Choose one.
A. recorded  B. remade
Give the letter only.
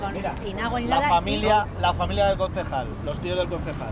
A